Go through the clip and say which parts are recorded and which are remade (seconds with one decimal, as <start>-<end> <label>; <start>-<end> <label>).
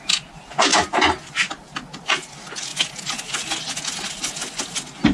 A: 0.0-5.1 recorded